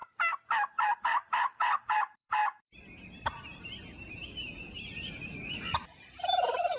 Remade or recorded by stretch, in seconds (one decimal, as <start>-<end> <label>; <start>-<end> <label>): 0.0-1.0 recorded; 1.0-2.4 remade; 2.4-3.3 recorded; 3.3-6.8 remade